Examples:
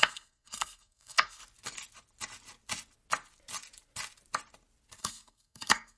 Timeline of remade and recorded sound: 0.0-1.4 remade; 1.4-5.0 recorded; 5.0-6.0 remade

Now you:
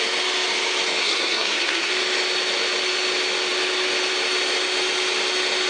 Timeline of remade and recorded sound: 0.0-1.0 recorded; 1.0-1.9 remade; 1.9-5.7 recorded

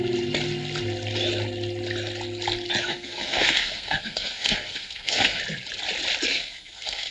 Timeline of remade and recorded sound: 0.0-2.8 recorded; 2.8-5.4 remade; 5.4-6.3 recorded; 6.3-7.1 remade

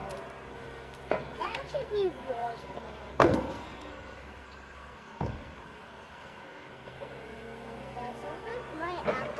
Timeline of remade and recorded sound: 0.0-0.5 recorded; 0.5-8.5 remade; 8.5-9.4 recorded

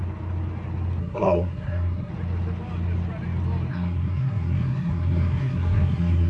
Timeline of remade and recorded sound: 0.0-1.0 recorded; 1.0-2.1 remade; 2.1-3.7 recorded; 3.7-6.3 remade

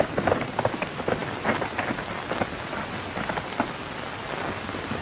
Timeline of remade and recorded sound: 0.0-5.0 recorded

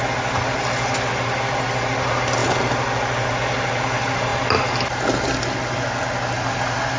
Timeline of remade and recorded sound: 0.0-7.0 recorded

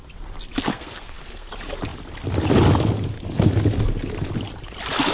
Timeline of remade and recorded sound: 0.0-0.7 recorded; 0.7-1.5 remade; 1.5-5.1 recorded